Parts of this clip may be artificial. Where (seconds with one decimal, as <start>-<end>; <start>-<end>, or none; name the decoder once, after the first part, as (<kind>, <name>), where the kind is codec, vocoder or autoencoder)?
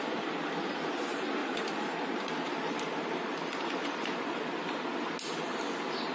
1.4-4.4 (vocoder, BigVGAN v2)